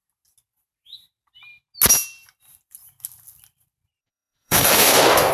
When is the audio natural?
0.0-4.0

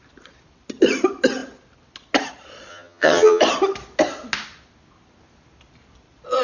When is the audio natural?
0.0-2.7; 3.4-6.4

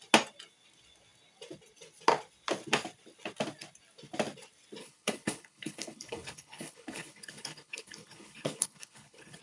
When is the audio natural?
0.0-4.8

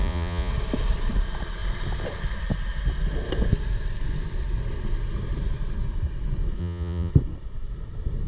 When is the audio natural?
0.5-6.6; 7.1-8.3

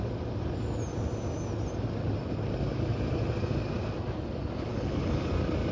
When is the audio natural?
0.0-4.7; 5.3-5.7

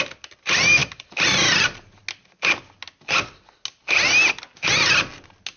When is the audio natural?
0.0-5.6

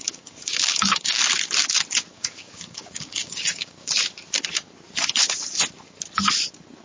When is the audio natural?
1.2-2.1; 3.9-6.8

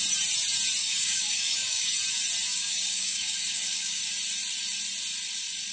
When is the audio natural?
0.0-0.8; 1.9-2.5; 4.0-5.7